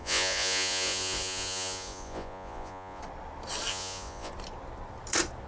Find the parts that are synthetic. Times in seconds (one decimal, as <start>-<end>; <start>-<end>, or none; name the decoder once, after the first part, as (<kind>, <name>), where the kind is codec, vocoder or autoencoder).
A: 0.0-3.0 (vocoder, Vocos); 3.7-4.3